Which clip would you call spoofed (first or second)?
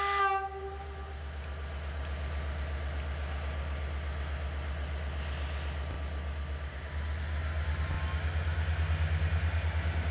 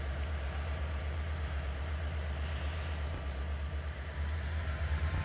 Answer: second